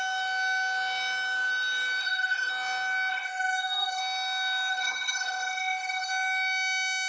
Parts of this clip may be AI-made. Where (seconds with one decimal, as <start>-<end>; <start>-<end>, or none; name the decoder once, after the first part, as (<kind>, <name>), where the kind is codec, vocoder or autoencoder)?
2.0-2.5 (codec, SNAC); 3.1-4.0; 4.7-6.1